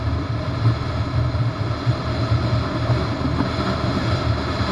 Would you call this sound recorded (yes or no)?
yes